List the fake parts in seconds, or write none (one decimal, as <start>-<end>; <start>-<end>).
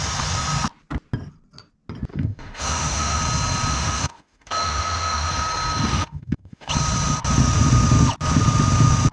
2.1-3.2; 3.7-5.3; 5.9-6.7